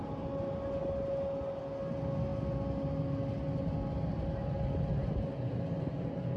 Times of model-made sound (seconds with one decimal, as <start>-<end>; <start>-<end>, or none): none